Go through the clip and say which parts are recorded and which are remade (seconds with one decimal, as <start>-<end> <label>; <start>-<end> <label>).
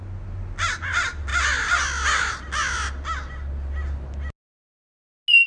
0.0-5.5 recorded